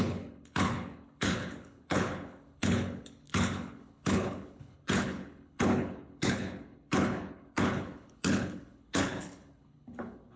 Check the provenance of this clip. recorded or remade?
remade